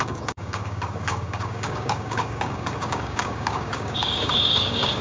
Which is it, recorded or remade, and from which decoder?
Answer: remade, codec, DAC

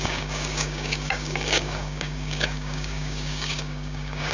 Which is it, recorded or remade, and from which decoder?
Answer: remade, codec, DAC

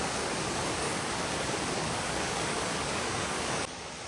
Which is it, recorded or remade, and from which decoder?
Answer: remade, codec, DAC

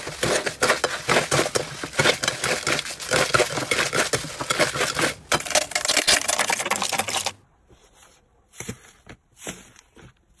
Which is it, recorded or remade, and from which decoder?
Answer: recorded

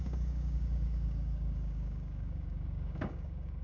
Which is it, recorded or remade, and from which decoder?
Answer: remade, codec, DAC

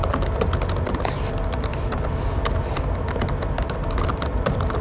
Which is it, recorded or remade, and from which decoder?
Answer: recorded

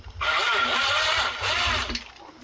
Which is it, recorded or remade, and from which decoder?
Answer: recorded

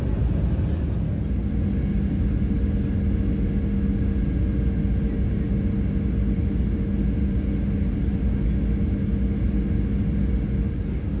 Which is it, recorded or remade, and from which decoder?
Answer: recorded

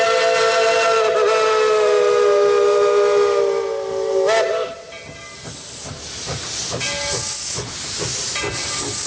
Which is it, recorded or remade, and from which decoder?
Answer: recorded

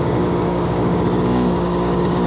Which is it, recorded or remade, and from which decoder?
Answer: remade, codec, DAC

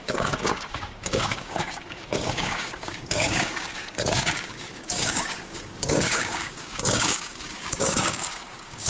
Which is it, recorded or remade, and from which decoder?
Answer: remade, codec, DAC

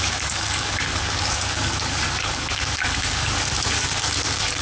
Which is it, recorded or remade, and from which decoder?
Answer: remade, codec, DAC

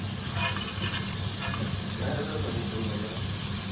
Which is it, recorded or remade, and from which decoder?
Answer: recorded